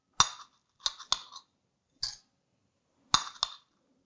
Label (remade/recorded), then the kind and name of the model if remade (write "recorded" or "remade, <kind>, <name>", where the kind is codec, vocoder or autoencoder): recorded